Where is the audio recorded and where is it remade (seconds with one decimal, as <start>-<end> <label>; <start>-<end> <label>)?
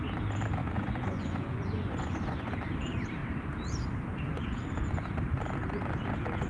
0.0-0.6 recorded; 0.6-2.5 remade; 2.5-6.5 recorded